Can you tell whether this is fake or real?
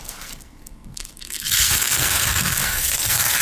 fake